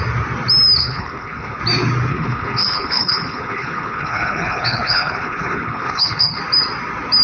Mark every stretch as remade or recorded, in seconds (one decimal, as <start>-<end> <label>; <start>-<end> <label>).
0.0-0.8 recorded; 0.8-1.6 remade; 1.6-2.1 recorded; 2.1-6.4 remade; 6.4-7.2 recorded